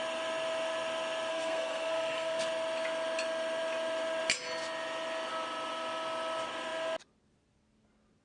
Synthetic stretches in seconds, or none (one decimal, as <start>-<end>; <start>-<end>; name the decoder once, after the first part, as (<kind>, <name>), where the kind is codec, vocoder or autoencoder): 1.3-2.4 (codec, SNAC)